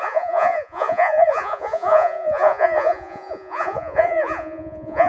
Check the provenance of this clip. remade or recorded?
remade